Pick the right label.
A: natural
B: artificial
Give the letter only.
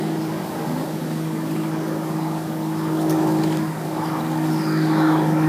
B